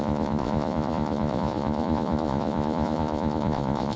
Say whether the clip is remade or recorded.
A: remade